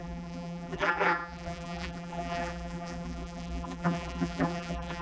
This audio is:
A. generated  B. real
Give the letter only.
A